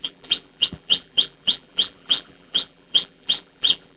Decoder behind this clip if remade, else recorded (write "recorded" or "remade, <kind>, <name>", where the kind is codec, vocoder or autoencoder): remade, vocoder, BigVGAN v2